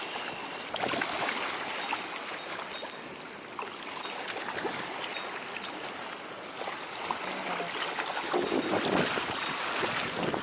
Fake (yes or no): no